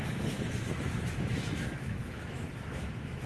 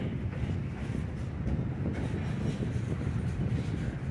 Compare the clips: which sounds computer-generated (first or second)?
first